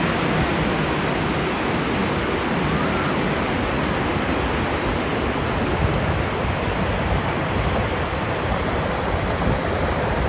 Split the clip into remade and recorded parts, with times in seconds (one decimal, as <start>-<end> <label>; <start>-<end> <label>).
0.0-10.3 recorded